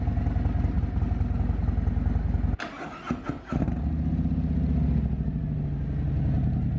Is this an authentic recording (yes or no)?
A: yes